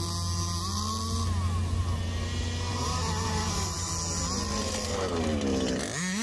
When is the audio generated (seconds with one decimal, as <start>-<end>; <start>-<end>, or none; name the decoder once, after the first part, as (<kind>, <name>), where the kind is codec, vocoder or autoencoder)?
2.7-3.9 (vocoder, BigVGAN v2)